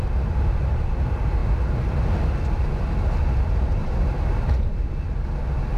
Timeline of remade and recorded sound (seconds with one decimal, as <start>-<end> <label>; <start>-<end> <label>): 0.0-3.8 recorded; 3.8-4.6 remade; 4.6-5.8 recorded